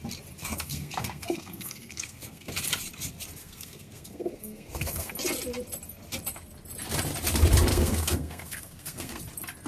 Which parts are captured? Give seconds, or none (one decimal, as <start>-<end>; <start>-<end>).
0.0-0.4; 2.5-3.4; 5.1-7.7; 9.2-9.7